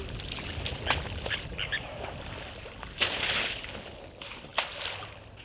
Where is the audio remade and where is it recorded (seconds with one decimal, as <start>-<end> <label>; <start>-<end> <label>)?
0.0-5.4 recorded